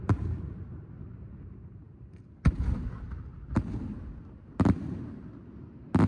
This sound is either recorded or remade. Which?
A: recorded